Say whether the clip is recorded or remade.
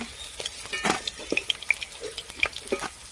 recorded